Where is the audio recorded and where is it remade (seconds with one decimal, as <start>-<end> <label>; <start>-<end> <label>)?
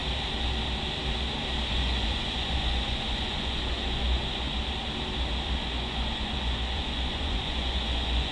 0.0-1.7 recorded; 1.7-4.5 remade; 4.5-5.6 recorded; 5.6-8.3 remade